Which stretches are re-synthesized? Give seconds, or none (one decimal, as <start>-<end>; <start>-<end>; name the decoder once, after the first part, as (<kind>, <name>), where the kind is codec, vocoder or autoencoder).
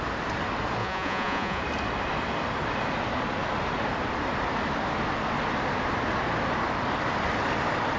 0.8-1.6 (vocoder, Vocos)